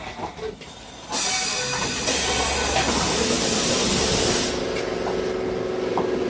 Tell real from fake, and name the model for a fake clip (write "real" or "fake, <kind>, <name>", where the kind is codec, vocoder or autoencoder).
real